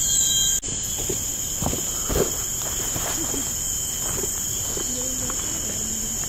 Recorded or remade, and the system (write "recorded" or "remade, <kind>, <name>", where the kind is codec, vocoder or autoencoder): recorded